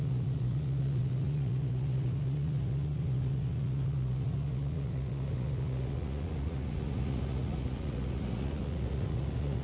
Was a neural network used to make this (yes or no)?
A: yes